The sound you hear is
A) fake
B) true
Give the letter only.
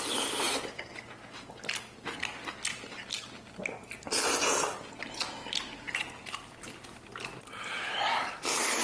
B